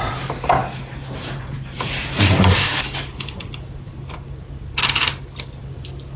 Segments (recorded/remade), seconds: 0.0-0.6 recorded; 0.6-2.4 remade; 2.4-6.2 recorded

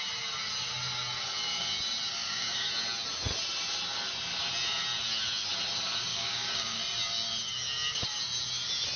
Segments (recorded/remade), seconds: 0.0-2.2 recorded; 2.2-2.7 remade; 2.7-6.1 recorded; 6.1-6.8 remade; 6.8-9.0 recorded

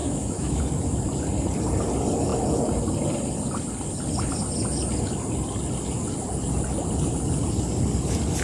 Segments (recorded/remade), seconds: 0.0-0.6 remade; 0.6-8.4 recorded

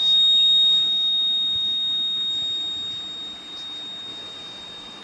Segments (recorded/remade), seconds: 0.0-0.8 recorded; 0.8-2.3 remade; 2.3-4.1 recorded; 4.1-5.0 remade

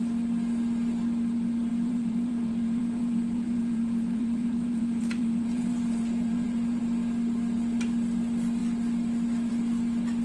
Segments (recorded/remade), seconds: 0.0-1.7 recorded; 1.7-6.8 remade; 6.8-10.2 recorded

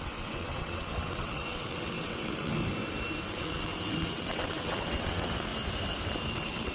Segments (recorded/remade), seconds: 0.0-2.6 remade; 2.6-3.3 recorded; 3.3-5.5 remade; 5.5-6.3 recorded; 6.3-6.7 remade